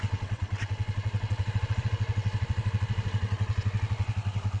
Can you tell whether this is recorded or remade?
remade